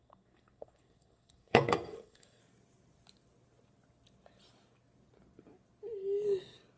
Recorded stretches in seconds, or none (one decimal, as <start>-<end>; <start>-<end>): 2.4-6.8